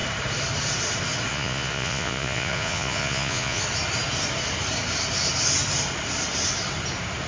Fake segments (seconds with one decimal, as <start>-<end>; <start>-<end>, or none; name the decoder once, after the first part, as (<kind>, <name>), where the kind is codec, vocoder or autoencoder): 1.3-3.6 (vocoder, Vocos)

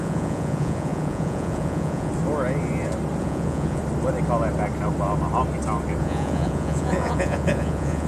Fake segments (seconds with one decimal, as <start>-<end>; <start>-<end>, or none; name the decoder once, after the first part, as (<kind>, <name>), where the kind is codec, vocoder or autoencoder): 0.0-2.1 (vocoder, Vocos); 3.2-3.8; 6.0-8.1

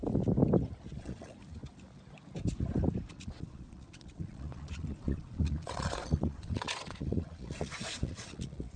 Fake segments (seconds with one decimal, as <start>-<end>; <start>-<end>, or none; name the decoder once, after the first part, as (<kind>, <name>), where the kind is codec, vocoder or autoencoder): 1.0-1.4 (vocoder, Vocos); 3.1-8.8

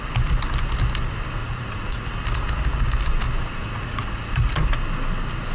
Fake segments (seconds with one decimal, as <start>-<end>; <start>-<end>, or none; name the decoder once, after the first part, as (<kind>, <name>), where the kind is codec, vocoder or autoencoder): 1.4-2.1 (vocoder, Vocos); 3.4-4.5

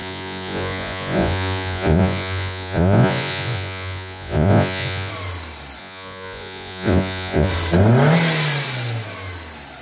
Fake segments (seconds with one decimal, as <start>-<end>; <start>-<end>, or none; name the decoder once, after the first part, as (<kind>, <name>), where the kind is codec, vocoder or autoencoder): 0.0-5.1 (vocoder, Vocos); 5.8-7.5

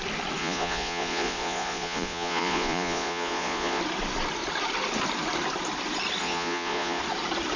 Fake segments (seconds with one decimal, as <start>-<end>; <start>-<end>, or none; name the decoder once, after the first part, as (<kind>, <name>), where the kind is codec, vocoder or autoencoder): 0.4-3.8 (vocoder, Vocos); 6.2-7.0

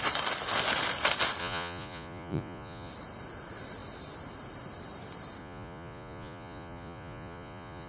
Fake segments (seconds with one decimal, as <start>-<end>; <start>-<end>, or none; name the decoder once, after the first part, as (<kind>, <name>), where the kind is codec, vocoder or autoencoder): 1.4-2.9 (vocoder, Vocos); 5.4-7.9

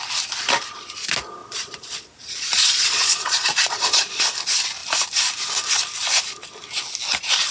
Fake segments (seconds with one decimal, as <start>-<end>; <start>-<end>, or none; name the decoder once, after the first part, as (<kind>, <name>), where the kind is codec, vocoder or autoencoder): 1.4-4.2 (vocoder, Vocos)